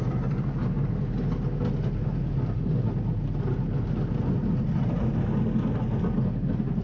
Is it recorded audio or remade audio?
recorded